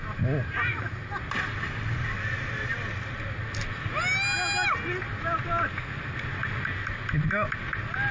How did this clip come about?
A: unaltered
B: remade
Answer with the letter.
A